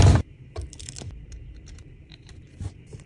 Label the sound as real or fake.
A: fake